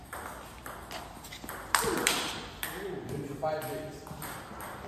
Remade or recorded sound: recorded